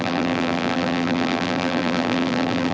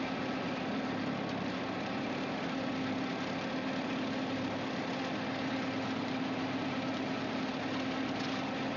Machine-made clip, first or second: first